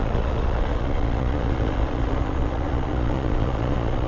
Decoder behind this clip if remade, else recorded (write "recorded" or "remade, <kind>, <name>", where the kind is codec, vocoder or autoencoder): remade, vocoder, Vocos